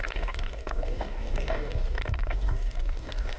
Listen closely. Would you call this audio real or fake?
fake